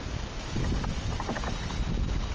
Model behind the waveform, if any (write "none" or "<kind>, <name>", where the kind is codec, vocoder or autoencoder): none